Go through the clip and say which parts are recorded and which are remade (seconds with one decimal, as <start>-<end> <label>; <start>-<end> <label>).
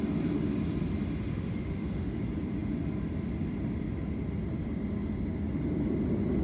0.0-1.3 recorded; 1.3-2.2 remade; 2.2-6.4 recorded